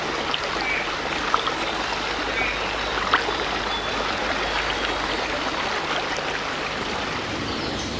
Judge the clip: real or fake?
real